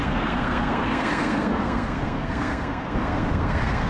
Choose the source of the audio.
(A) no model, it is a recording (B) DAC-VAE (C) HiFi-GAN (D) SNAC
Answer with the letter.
D